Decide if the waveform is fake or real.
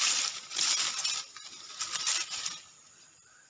real